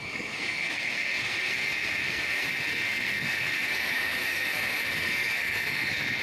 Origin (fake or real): fake